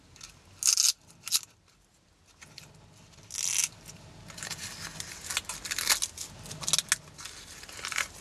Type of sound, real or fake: real